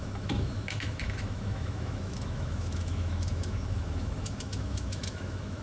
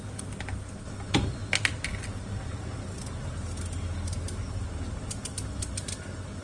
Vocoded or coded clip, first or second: first